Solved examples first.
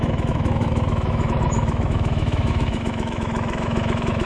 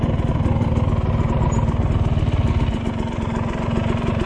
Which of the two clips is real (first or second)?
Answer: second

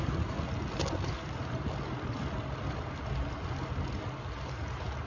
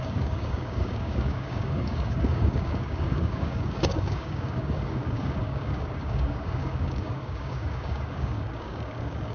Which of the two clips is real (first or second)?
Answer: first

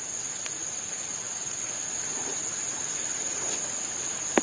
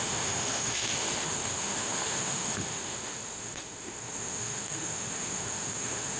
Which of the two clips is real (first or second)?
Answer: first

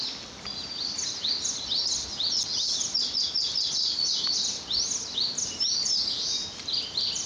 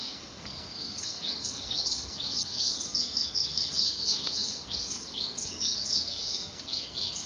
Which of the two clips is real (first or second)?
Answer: first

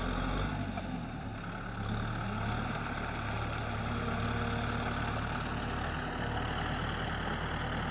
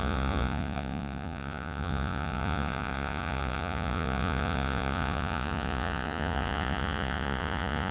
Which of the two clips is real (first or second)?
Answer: first